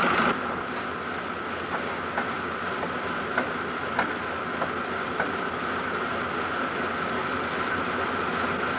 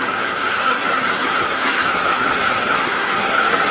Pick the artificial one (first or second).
second